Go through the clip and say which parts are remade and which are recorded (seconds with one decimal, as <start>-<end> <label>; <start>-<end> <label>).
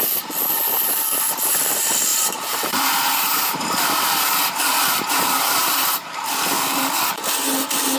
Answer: 0.0-2.1 recorded; 2.1-6.9 remade; 6.9-8.0 recorded